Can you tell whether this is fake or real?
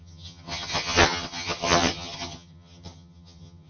fake